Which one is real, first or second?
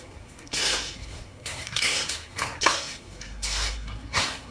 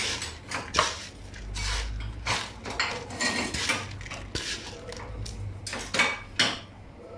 second